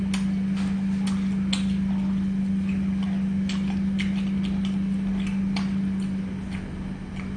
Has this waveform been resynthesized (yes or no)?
no